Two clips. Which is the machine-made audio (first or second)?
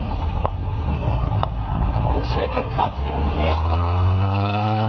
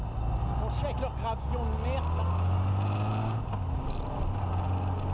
first